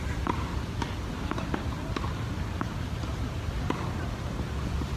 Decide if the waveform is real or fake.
real